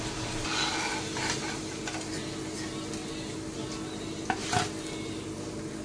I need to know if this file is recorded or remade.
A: recorded